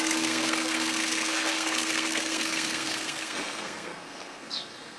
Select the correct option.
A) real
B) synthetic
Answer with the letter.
B